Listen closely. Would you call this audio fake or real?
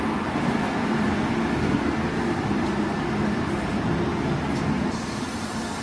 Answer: real